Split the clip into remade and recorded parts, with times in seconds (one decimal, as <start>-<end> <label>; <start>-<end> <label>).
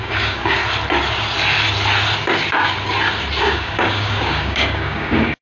0.0-0.6 remade; 0.6-3.4 recorded; 3.4-5.4 remade